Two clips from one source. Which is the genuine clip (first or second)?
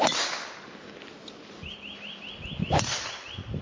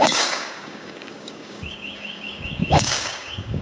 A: first